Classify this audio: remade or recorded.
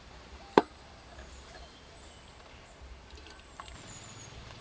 remade